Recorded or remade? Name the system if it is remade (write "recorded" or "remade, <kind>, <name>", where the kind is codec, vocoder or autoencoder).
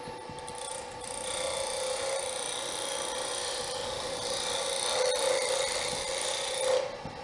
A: recorded